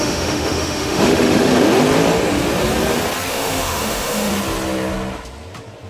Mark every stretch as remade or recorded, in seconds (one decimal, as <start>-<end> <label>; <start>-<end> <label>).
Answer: 0.0-1.5 remade; 1.5-3.3 recorded; 3.3-4.3 remade; 4.3-5.9 recorded